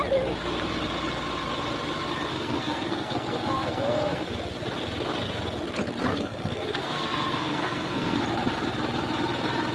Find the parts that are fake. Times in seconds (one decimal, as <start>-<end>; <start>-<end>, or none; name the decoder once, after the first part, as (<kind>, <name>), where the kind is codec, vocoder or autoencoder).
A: 2.3-4.3 (codec, SNAC); 6.1-8.2